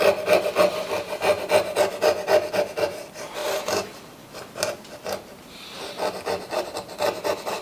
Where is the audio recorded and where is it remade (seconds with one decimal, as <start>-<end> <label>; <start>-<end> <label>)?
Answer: 0.0-7.6 recorded